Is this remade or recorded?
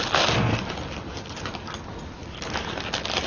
recorded